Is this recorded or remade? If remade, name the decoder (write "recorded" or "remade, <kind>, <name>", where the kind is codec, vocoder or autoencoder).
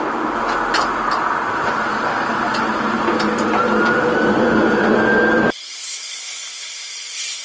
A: remade, vocoder, BigVGAN v2